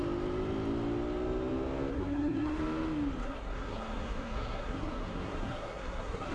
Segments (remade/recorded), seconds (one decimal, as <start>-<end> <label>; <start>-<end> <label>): 0.0-1.9 recorded; 1.9-2.6 remade; 2.6-3.2 recorded; 3.2-6.3 remade